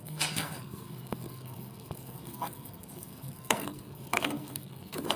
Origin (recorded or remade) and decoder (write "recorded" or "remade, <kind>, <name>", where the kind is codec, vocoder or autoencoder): remade, codec, SNAC